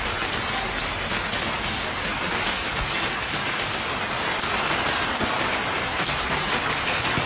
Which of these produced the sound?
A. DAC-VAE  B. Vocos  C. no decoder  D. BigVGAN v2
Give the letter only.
C